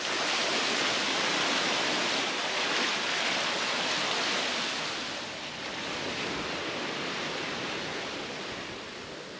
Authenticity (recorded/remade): recorded